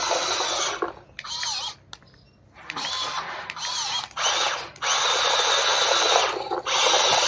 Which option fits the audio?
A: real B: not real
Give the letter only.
A